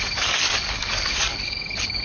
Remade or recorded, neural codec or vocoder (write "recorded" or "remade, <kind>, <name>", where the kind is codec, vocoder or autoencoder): remade, codec, DAC